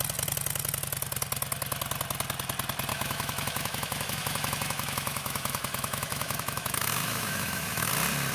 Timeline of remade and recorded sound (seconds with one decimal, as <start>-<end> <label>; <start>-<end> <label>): 0.0-2.9 recorded; 2.9-7.9 remade; 7.9-8.3 recorded